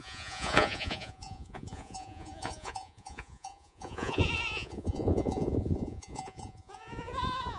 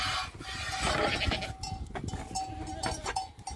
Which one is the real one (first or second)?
second